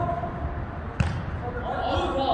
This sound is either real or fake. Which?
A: real